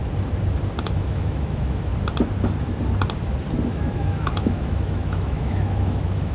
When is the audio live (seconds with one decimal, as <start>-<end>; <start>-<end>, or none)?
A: 0.0-0.8; 1.9-3.7